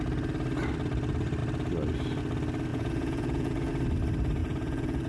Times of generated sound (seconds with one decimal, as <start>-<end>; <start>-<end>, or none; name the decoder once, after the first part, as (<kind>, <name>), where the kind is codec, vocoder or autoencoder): 2.7-3.7 (vocoder, Vocos); 4.4-5.1